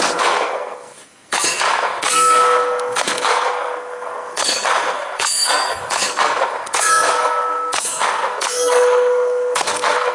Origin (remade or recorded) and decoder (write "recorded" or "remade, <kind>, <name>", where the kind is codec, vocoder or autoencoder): remade, codec, SNAC